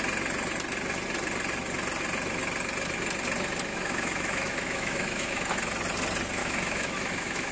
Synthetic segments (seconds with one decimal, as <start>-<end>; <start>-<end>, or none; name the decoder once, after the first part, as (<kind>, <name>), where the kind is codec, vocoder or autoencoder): 3.7-5.4 (autoencoder, DAC-VAE); 6.4-7.5